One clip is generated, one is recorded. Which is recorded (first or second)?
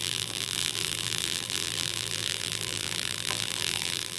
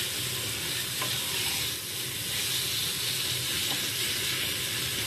second